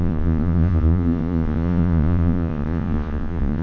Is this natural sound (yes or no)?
no